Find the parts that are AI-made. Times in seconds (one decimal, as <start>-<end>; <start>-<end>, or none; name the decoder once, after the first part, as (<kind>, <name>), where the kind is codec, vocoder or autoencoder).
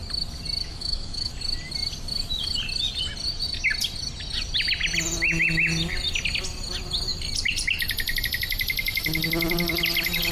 0.6-1.3 (autoencoder, DAC-VAE)